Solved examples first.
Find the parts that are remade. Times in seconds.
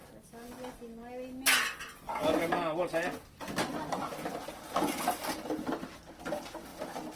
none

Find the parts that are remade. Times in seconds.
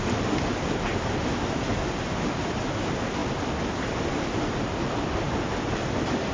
none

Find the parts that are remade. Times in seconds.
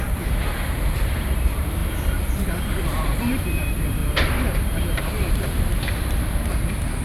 0.0-4.0 (vocoder, BigVGAN v2); 5.0-7.0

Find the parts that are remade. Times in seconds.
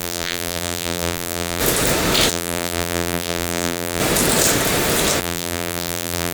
0.0-1.6 (vocoder, BigVGAN v2); 2.3-4.0; 5.2-6.3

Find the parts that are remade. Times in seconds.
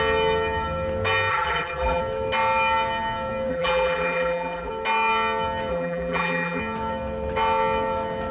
1.3-2.0 (vocoder, BigVGAN v2); 3.5-4.7; 5.7-6.6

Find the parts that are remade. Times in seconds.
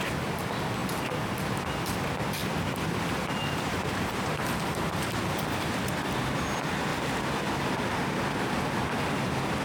0.0-6.9 (vocoder, BigVGAN v2); 9.1-9.6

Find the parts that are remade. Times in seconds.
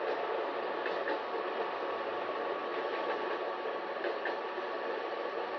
0.0-0.4 (vocoder, BigVGAN v2); 2.1-5.6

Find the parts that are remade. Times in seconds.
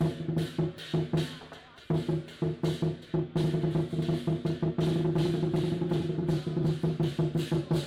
5.2-7.9 (vocoder, BigVGAN v2)